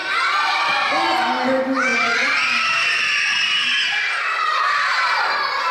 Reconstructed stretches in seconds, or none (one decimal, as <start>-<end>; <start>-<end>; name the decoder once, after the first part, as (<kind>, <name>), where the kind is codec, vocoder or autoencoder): 0.0-0.9 (vocoder, BigVGAN v2); 1.9-5.3